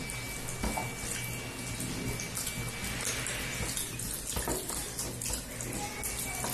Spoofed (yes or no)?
no